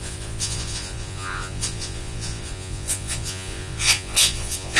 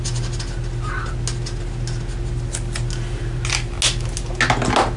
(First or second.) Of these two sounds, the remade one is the first